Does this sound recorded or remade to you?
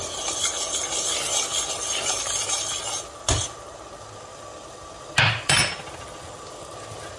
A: recorded